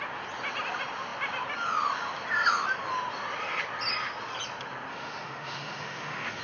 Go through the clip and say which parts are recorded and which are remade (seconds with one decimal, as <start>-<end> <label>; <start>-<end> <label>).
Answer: 0.0-4.9 recorded; 4.9-6.4 remade

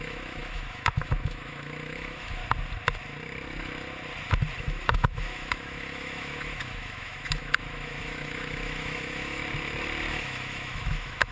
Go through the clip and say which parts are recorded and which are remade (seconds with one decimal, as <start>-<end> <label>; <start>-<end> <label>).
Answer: 0.0-2.4 remade; 2.4-4.6 recorded; 4.6-9.4 remade; 9.4-10.1 recorded; 10.1-11.3 remade

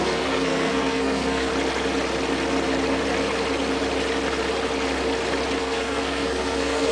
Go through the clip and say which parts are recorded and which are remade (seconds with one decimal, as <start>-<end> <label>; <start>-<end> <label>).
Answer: 0.0-1.5 remade; 1.5-5.6 recorded; 5.6-6.9 remade

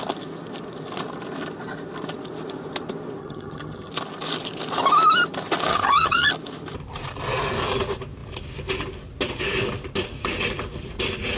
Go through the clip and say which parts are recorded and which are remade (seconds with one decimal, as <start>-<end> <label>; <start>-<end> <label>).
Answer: 0.0-3.2 recorded; 3.2-3.9 remade; 3.9-5.7 recorded; 5.7-6.3 remade; 6.3-11.4 recorded

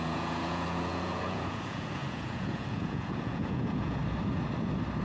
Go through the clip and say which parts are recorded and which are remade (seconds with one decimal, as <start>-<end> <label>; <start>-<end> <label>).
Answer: 0.0-4.0 remade; 4.0-5.0 recorded

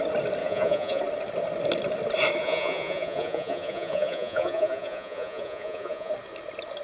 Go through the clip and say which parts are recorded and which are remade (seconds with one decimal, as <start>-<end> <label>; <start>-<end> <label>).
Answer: 0.0-0.4 recorded; 0.4-1.0 remade; 1.0-2.4 recorded; 2.4-6.1 remade; 6.1-6.8 recorded

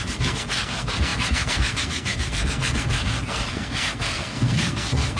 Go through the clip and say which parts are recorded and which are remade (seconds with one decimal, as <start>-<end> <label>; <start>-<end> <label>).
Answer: 0.0-5.2 remade

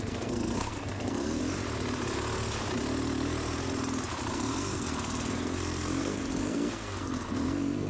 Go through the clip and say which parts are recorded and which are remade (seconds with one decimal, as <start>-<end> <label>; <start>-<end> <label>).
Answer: 0.0-1.4 remade; 1.4-4.3 recorded; 4.3-7.9 remade